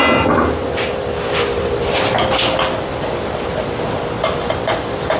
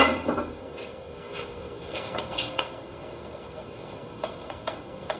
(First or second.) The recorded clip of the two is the first